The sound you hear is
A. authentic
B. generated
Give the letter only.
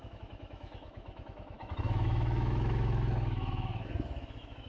B